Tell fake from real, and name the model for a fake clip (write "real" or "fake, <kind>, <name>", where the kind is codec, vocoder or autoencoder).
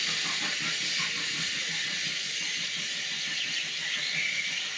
real